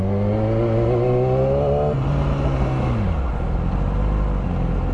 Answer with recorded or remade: recorded